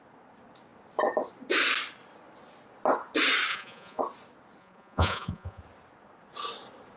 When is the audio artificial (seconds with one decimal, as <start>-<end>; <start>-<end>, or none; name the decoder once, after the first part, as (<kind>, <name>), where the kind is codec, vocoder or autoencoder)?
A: 3.5-4.0 (vocoder, Vocos); 4.6-5.6